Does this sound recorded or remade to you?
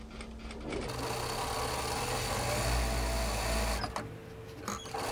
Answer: recorded